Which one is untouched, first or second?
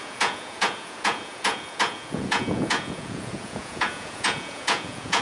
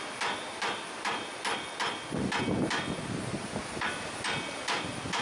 second